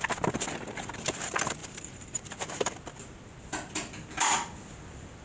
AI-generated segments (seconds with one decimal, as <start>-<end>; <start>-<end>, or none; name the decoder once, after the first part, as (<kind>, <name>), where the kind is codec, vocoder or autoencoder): 1.6-2.7 (vocoder, BigVGAN v2)